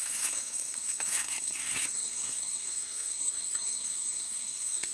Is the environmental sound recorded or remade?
remade